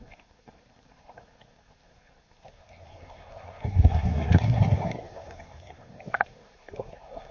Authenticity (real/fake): fake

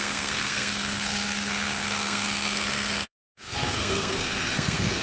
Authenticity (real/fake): fake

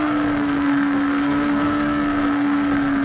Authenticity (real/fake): fake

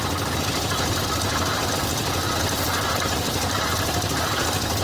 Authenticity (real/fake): real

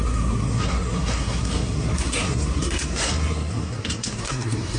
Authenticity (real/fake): fake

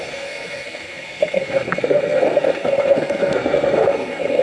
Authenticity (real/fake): fake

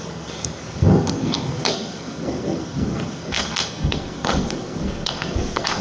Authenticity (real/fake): fake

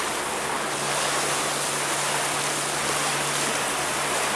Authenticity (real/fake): real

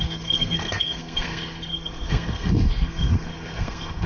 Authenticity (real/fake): fake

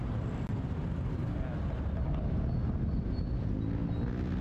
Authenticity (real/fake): real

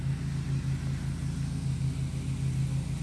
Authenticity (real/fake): real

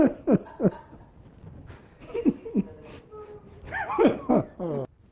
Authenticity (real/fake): real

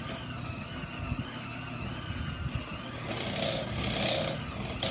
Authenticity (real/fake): real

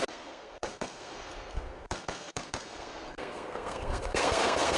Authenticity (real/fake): fake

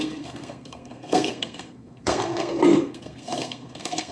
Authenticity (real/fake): fake